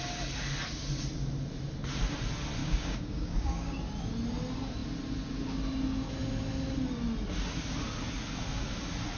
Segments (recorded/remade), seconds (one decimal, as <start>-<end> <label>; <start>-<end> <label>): 0.0-2.6 recorded; 2.6-3.8 remade; 3.8-9.2 recorded